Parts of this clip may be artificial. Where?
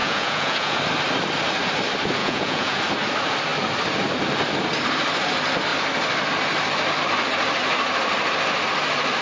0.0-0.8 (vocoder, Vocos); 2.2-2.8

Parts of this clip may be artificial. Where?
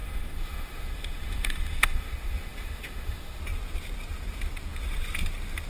0.0-3.4 (autoencoder, DAC-VAE)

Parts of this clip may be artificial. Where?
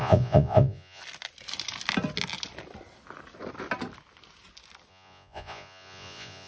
0.0-1.0 (vocoder, Vocos); 4.9-6.5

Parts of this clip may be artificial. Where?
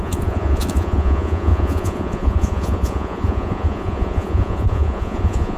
0.0-5.6 (vocoder, Vocos)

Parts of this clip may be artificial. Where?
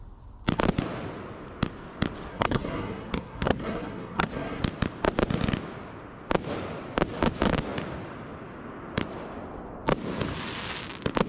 2.3-4.6 (codec, SNAC)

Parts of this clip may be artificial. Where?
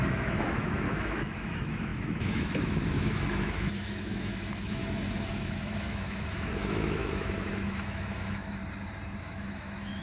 0.0-4.8 (autoencoder, DAC-VAE); 5.3-8.6; 9.2-10.0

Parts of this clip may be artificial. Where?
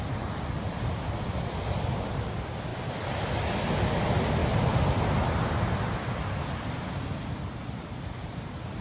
none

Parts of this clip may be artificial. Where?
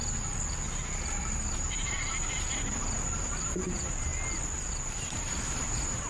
1.2-2.1 (vocoder, BigVGAN v2); 2.7-4.1; 4.6-6.1